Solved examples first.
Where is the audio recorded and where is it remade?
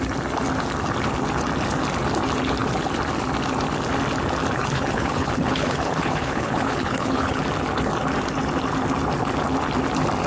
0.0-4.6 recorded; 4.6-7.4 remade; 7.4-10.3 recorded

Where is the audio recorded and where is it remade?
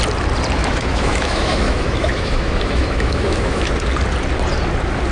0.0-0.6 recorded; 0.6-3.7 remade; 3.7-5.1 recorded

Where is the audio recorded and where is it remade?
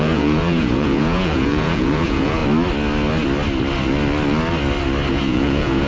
0.0-2.4 remade; 2.4-5.1 recorded; 5.1-5.9 remade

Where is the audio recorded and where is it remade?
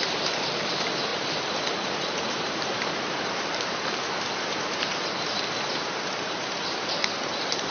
0.0-1.1 remade; 1.1-1.6 recorded; 1.6-5.0 remade; 5.0-5.7 recorded; 5.7-7.7 remade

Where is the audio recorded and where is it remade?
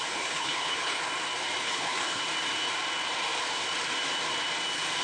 0.0-1.0 remade; 1.0-1.6 recorded; 1.6-2.2 remade; 2.2-5.0 recorded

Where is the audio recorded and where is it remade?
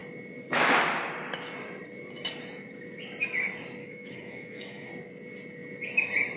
0.0-3.8 recorded; 3.8-4.9 remade; 4.9-6.4 recorded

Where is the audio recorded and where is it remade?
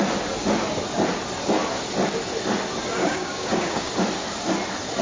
0.0-3.0 recorded; 3.0-3.9 remade; 3.9-5.0 recorded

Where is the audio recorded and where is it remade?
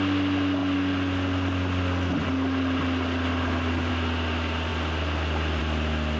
0.0-6.2 recorded